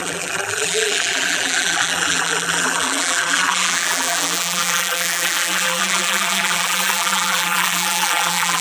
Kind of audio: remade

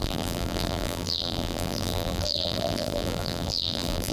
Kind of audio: remade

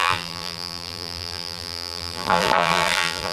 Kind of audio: remade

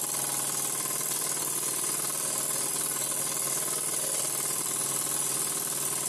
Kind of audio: recorded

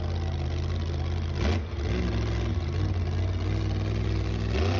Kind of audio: recorded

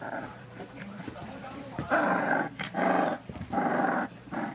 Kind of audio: remade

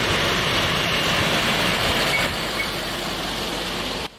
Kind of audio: remade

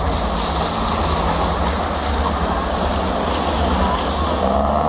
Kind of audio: recorded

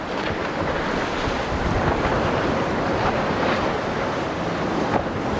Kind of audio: recorded